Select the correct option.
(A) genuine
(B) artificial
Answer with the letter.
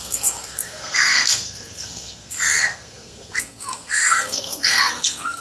B